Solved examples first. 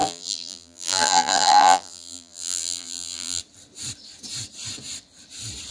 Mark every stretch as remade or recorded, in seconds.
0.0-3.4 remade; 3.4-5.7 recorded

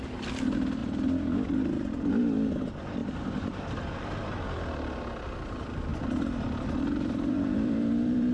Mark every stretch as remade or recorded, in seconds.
0.0-3.0 recorded; 3.0-4.4 remade; 4.4-5.9 recorded; 5.9-8.3 remade

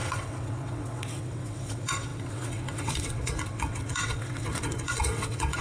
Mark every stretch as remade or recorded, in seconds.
0.0-5.6 remade

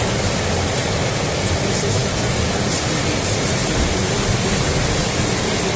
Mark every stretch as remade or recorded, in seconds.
0.0-5.8 recorded

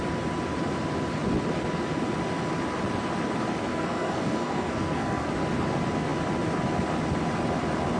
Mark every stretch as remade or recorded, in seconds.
0.0-3.7 recorded; 3.7-5.3 remade; 5.3-8.0 recorded

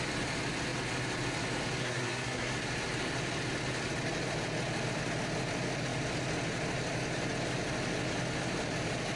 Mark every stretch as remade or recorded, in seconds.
0.0-1.8 recorded; 1.8-2.5 remade; 2.5-9.2 recorded